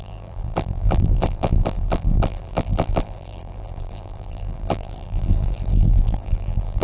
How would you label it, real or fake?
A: fake